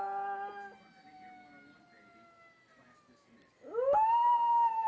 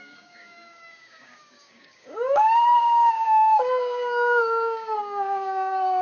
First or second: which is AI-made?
second